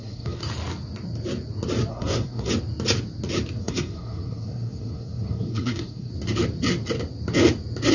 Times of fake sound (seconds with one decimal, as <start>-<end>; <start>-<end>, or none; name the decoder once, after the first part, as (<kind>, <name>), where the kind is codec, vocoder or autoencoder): 0.0-0.4 (codec, SNAC); 1.9-2.5; 3.6-6.1